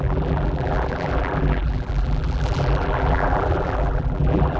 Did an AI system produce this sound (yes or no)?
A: yes